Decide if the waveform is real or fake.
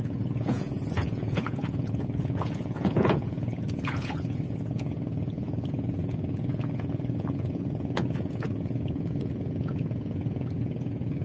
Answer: fake